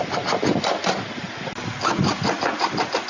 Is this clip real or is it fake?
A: real